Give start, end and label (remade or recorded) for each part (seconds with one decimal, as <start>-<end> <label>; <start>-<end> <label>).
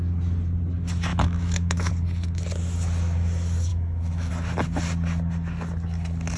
0.0-1.1 recorded; 1.1-1.9 remade; 1.9-3.7 recorded; 3.7-4.3 remade; 4.3-6.4 recorded